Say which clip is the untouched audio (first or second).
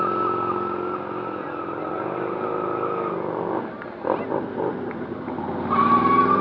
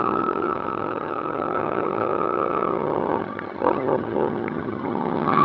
first